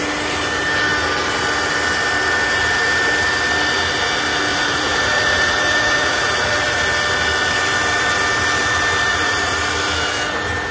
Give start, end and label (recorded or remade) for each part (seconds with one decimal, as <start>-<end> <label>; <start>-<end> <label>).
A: 0.0-4.5 recorded; 4.5-6.8 remade; 6.8-9.1 recorded; 9.1-9.6 remade; 9.6-10.7 recorded